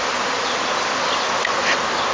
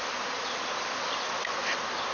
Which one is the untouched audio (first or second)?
first